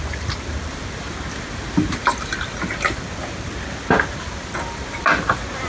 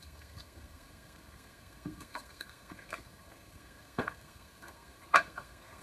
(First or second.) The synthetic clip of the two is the second